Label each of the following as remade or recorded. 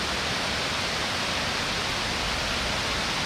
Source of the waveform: recorded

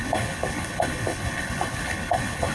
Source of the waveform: remade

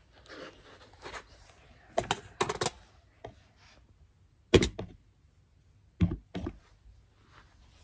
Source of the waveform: recorded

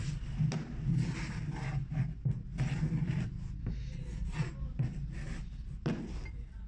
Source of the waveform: recorded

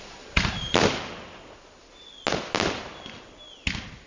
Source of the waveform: recorded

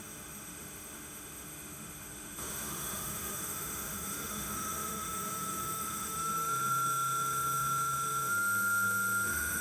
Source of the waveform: remade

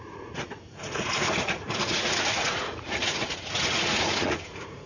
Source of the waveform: remade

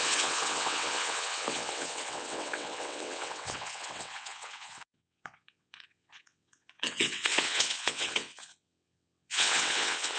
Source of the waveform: remade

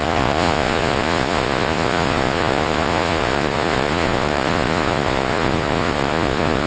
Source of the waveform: remade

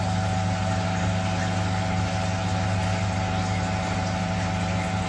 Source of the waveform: recorded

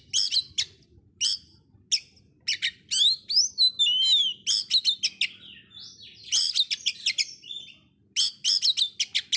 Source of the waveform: recorded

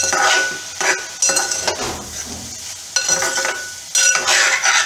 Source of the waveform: recorded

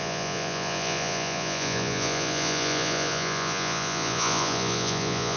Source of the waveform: remade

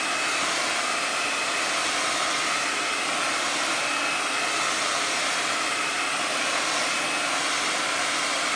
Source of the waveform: recorded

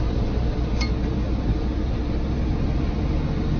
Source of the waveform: recorded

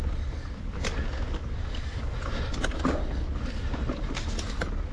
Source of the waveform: recorded